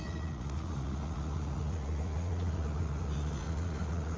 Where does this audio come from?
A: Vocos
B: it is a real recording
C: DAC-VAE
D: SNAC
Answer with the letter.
A